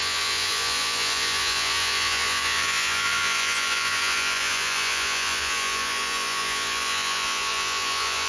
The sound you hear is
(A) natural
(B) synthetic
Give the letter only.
B